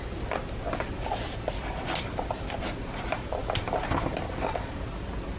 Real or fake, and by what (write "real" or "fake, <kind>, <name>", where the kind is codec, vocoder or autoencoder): real